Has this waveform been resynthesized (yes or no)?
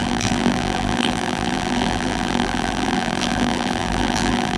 yes